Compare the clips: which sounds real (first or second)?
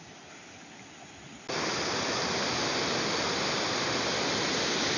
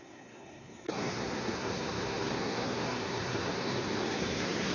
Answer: first